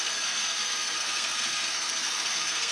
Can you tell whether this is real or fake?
fake